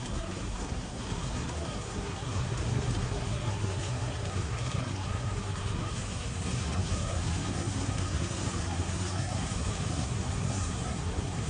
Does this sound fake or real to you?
fake